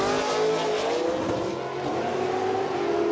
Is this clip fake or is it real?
real